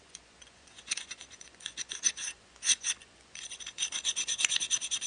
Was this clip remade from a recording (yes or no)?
yes